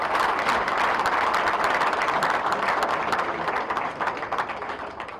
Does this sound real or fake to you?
real